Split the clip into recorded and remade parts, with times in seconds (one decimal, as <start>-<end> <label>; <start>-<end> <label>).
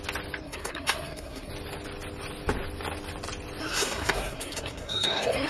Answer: 0.0-0.4 recorded; 0.4-1.5 remade; 1.5-3.6 recorded; 3.6-5.5 remade